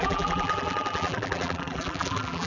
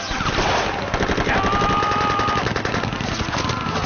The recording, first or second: second